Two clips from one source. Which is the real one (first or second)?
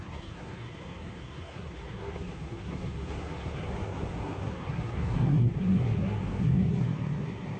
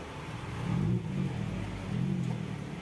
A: second